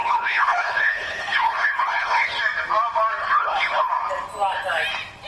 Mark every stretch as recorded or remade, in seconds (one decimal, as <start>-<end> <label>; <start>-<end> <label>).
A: 0.0-2.4 remade; 2.4-3.2 recorded; 3.2-3.9 remade; 3.9-5.3 recorded